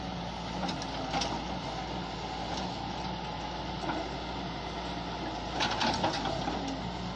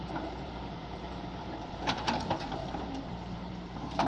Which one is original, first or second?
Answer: first